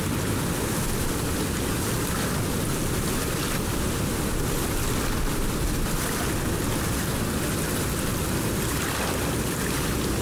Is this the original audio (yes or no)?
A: yes